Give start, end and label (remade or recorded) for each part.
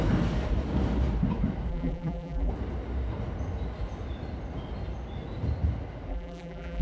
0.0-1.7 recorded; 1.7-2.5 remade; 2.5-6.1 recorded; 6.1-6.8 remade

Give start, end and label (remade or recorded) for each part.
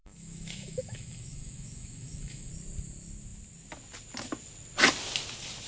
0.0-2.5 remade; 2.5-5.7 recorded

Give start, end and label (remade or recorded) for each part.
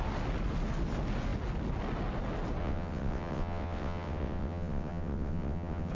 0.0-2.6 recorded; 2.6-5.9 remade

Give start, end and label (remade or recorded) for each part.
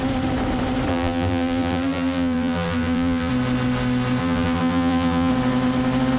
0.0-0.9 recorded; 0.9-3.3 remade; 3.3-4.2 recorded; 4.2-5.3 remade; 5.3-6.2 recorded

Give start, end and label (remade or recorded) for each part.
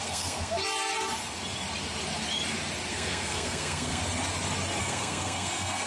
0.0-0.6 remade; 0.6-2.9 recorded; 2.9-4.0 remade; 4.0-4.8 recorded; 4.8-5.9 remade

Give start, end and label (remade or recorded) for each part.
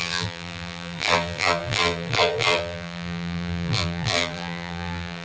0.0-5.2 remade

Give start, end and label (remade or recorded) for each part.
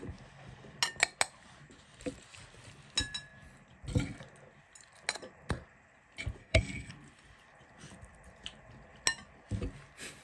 0.0-6.4 recorded; 6.4-6.9 remade; 6.9-10.2 recorded